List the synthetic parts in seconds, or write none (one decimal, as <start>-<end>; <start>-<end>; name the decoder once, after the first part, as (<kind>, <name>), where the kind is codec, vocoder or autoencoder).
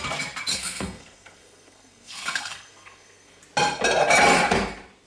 0.5-3.4 (codec, SNAC)